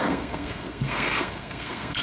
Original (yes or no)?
no